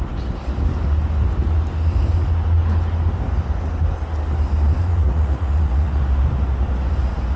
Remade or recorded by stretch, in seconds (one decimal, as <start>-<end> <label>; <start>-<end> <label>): 0.0-4.8 recorded; 4.8-6.0 remade; 6.0-7.4 recorded